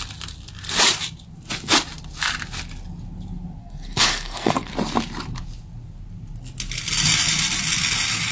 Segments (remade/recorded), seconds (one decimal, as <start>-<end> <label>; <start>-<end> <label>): 0.0-3.6 recorded; 3.6-4.7 remade; 4.7-8.3 recorded